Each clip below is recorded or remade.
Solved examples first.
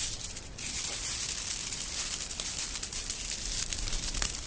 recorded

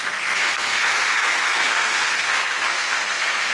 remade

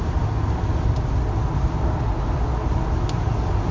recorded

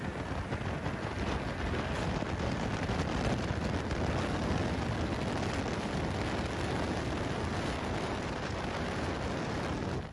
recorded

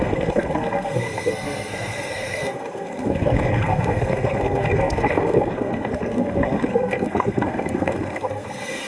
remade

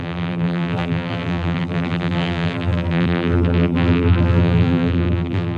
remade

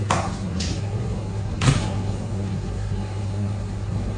remade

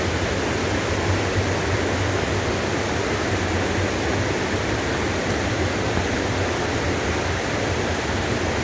recorded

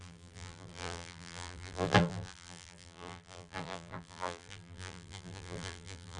remade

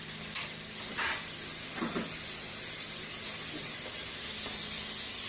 recorded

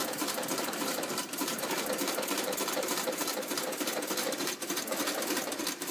remade